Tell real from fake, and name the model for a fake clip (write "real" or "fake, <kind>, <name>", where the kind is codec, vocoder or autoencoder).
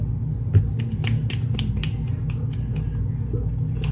real